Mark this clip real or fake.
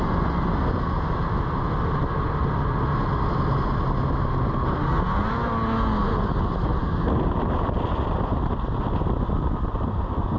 real